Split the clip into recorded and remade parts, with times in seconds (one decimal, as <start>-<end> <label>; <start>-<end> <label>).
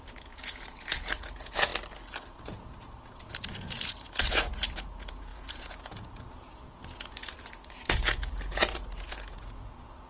0.0-1.7 remade; 1.7-2.3 recorded; 2.3-10.1 remade